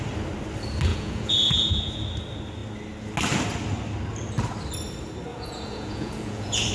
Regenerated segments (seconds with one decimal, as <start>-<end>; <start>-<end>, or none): 0.9-2.0; 5.3-6.7

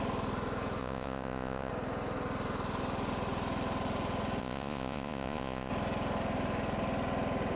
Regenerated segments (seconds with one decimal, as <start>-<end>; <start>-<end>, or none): 0.8-1.7; 4.4-5.7

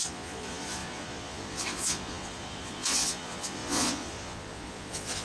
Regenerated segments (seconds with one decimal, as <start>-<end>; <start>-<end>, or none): 0.0-5.2

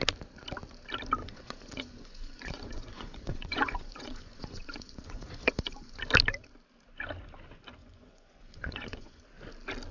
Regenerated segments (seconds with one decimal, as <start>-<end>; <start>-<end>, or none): 1.2-6.0; 7.8-9.2

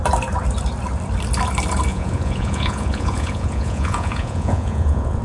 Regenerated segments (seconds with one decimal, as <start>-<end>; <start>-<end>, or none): 1.9-5.2